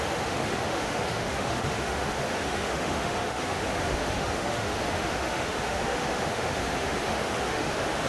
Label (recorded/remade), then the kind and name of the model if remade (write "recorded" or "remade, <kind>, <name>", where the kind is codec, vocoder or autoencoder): remade, autoencoder, DAC-VAE